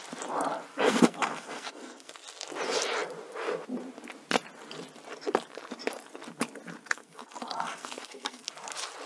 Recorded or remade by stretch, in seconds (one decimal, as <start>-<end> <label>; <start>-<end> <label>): 0.0-0.7 recorded; 0.7-2.1 remade; 2.1-6.8 recorded; 6.8-8.5 remade; 8.5-9.1 recorded